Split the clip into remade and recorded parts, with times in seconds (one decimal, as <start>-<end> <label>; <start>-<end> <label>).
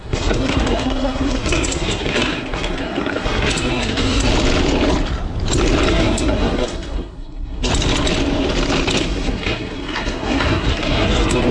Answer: 0.0-4.3 remade; 4.3-5.9 recorded; 5.9-7.7 remade; 7.7-9.0 recorded; 9.0-11.5 remade